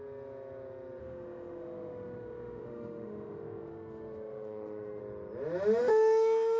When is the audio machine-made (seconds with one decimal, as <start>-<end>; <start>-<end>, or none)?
1.0-5.0; 5.8-6.6